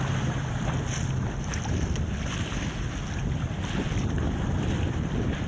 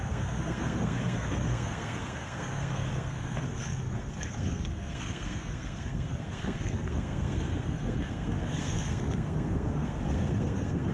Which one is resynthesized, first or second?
second